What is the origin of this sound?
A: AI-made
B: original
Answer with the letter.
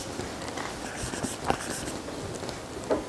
B